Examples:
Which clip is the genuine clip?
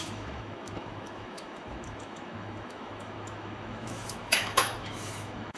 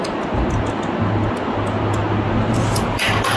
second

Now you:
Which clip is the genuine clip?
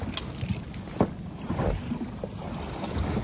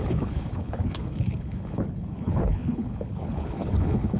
first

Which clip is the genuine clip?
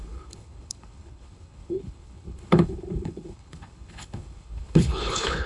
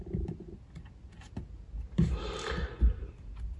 second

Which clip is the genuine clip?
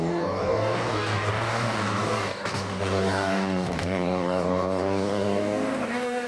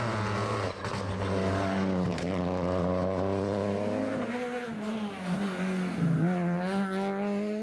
second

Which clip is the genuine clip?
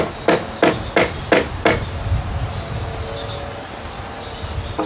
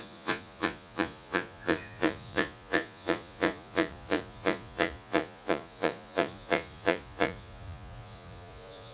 first